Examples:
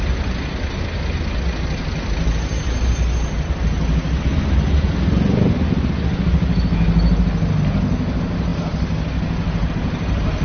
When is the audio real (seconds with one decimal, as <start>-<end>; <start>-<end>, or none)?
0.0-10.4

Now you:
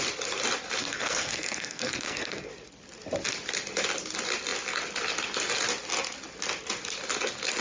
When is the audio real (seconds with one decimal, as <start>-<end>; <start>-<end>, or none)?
0.0-0.8; 2.5-7.6

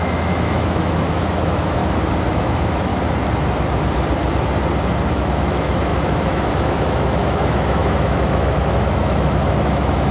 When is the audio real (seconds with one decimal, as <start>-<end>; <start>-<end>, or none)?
1.8-2.3; 2.9-5.1